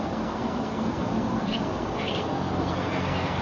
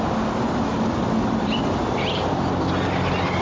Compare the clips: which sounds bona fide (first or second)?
second